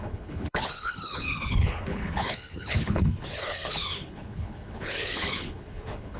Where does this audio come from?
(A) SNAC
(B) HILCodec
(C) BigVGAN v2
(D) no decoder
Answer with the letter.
B